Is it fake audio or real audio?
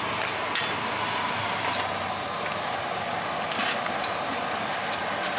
real